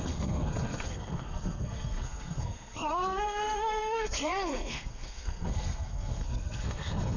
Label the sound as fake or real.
fake